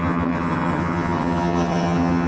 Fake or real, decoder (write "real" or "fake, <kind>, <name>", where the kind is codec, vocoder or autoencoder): fake, vocoder, HiFi-GAN